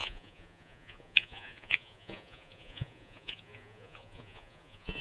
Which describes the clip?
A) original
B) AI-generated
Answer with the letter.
B